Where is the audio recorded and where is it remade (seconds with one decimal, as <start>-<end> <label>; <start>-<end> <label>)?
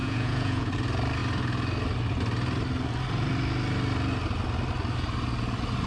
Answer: 0.0-0.7 remade; 0.7-5.9 recorded